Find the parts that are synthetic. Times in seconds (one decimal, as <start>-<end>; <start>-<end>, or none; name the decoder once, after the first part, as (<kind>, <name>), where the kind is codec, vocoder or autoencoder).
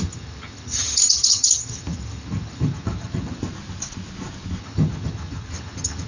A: 0.0-3.4 (vocoder, HiFi-GAN); 4.6-6.1